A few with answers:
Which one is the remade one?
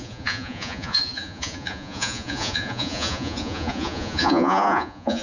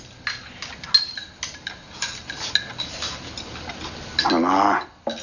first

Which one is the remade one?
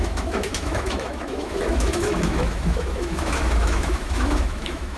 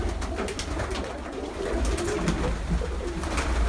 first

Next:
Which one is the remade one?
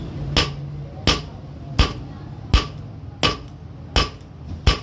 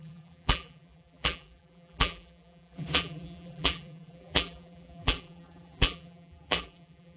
second